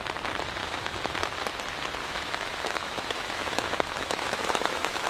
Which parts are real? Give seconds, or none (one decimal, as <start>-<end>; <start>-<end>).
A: 0.0-0.6; 1.1-2.0